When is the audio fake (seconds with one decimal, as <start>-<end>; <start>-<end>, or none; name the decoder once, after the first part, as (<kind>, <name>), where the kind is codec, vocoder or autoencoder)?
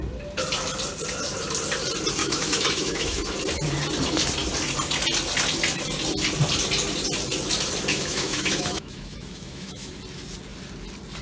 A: 2.2-3.2 (autoencoder, DAC-VAE); 7.9-10.0